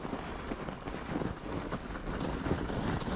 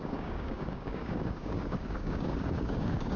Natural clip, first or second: first